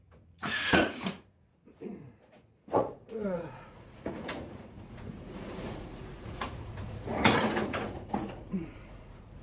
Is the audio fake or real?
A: fake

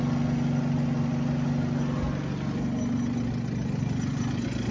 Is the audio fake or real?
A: real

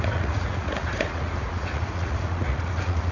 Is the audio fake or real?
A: fake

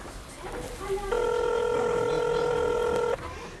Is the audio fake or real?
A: real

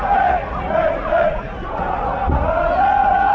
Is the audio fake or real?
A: fake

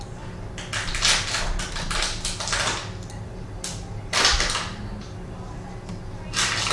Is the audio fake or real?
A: real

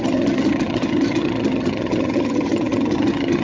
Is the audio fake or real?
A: fake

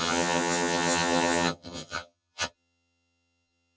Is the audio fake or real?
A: fake